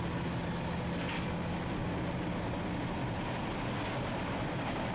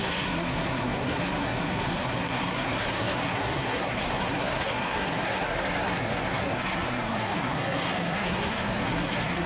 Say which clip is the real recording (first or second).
first